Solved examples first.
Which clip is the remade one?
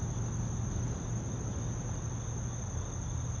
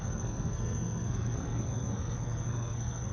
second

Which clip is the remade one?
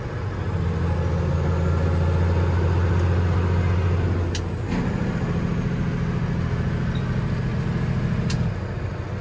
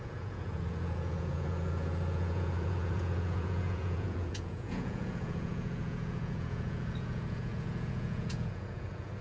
second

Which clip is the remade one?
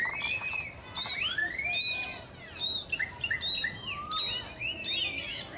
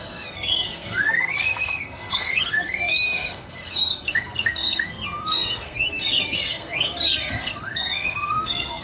second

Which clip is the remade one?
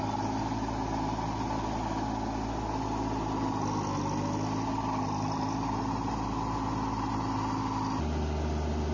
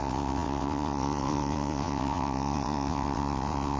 second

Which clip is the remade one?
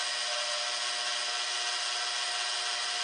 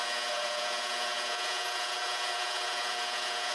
second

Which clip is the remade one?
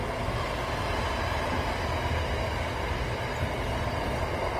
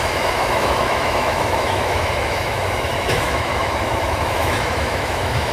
second